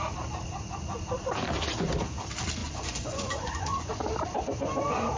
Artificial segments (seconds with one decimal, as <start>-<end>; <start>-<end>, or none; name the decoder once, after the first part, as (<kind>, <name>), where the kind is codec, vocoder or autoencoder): 2.6-3.9 (vocoder, Vocos)